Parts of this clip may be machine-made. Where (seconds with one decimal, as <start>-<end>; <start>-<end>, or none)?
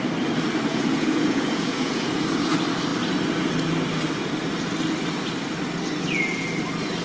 0.7-2.2